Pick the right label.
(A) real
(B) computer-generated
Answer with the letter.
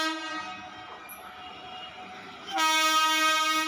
A